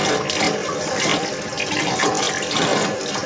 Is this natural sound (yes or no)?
yes